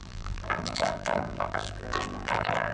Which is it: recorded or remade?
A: remade